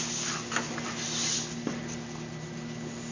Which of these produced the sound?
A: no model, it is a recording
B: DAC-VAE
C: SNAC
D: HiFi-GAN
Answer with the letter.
A